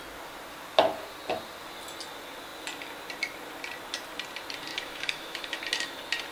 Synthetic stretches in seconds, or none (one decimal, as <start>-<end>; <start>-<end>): 4.7-5.6

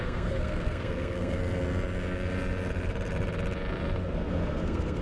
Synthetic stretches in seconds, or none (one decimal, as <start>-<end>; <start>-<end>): 0.0-1.4; 4.3-5.0

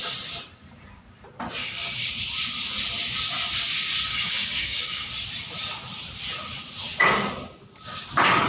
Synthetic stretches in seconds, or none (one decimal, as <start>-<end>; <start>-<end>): 1.6-2.1; 4.1-5.1

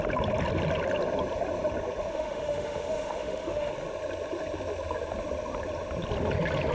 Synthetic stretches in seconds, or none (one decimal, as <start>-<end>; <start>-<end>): 2.1-3.7

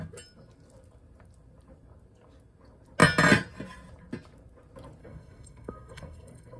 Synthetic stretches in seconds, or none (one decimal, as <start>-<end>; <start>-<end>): 5.0-6.6

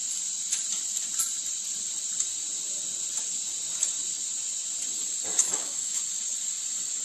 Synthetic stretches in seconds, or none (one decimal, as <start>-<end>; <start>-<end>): 5.4-6.0

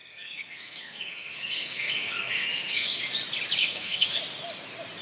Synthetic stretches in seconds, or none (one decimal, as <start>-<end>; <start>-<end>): 0.0-3.0; 3.6-4.2

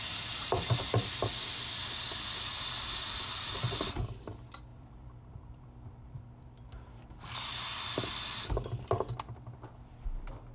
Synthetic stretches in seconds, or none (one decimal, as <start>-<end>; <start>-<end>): 4.7-7.5